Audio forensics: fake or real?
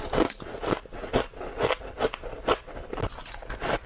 real